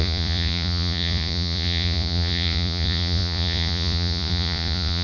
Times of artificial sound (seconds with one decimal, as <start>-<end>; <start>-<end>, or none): 0.0-5.0